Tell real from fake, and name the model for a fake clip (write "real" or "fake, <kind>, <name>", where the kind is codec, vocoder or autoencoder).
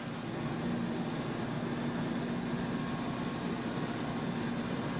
real